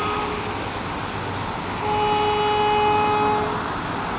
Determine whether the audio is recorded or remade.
recorded